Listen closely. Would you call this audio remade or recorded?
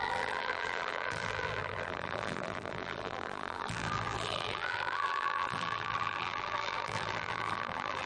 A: remade